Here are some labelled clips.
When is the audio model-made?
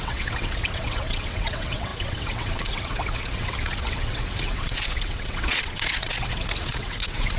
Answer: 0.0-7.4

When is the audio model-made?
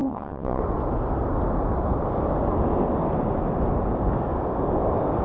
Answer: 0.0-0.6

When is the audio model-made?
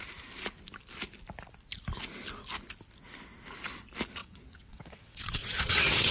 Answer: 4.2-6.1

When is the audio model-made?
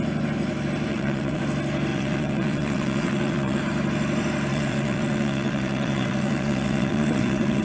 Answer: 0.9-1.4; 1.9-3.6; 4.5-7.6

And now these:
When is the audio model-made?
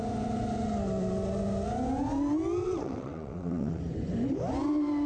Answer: 2.6-3.8